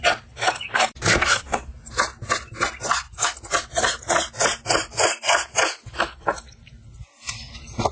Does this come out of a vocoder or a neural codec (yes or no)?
no